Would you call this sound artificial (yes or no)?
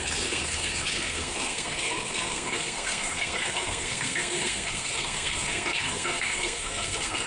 yes